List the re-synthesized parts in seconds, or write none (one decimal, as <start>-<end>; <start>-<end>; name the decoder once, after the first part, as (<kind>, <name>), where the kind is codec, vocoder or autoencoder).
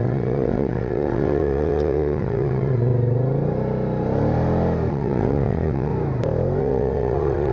0.0-2.9 (vocoder, WaveNeXt); 4.9-5.9; 6.6-7.5